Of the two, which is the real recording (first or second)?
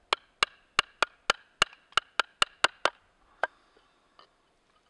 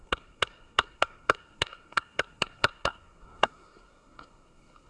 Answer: first